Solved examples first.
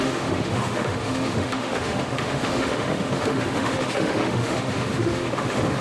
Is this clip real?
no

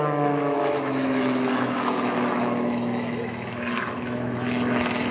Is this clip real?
no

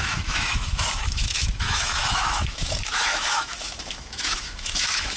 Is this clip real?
no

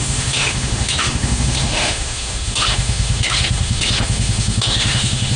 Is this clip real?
no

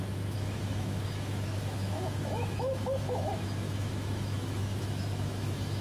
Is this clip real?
no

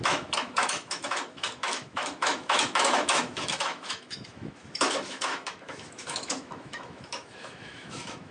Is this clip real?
no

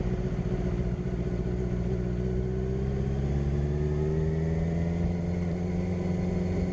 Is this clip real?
yes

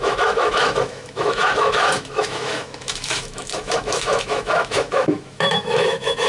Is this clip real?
no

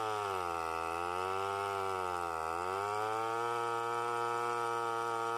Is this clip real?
yes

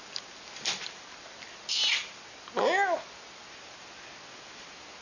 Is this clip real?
yes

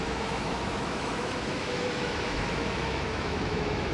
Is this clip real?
no